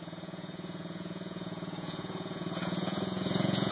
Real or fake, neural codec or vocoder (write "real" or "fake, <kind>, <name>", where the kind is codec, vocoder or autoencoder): fake, vocoder, Vocos